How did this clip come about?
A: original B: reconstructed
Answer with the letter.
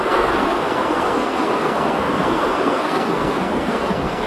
B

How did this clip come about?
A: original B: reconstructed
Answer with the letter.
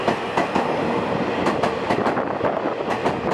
A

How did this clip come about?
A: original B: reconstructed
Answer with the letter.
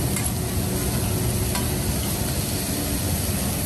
A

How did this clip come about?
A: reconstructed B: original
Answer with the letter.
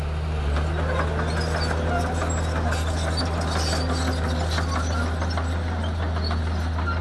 B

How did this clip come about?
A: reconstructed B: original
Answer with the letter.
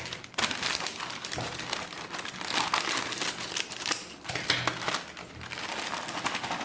B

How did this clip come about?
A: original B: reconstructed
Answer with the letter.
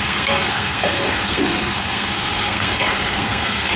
B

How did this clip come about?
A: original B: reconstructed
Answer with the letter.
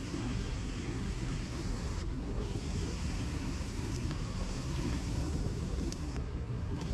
B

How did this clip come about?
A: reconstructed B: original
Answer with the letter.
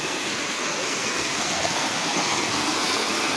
A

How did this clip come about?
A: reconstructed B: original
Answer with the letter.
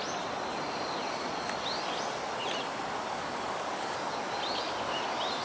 B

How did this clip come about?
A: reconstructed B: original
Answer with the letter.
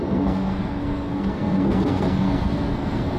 A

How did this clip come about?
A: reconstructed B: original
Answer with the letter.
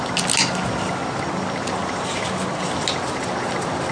B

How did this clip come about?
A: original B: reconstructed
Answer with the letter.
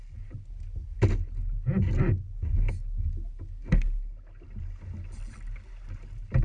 A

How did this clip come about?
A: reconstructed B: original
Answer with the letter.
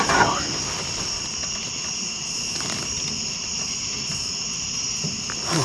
B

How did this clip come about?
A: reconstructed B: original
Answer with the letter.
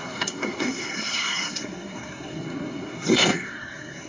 A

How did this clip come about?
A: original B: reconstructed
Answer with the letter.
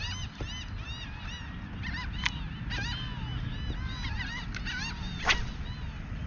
A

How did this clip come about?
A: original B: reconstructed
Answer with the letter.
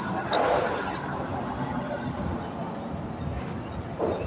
A